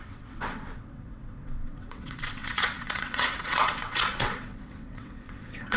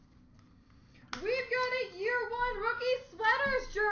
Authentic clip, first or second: second